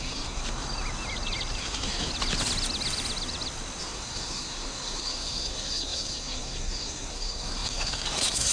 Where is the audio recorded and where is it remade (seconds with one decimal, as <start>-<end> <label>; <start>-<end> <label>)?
0.0-0.4 remade; 0.4-1.6 recorded; 1.6-2.1 remade; 2.1-3.8 recorded; 3.8-8.5 remade